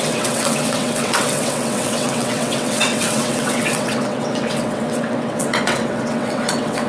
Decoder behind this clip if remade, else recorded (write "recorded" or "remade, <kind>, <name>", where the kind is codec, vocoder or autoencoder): remade, vocoder, WaveNeXt